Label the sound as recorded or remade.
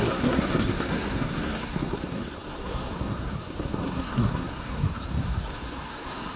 remade